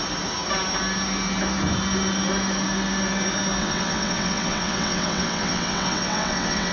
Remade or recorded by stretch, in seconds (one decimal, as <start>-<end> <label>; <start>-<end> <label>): 0.0-3.6 recorded; 3.6-6.7 remade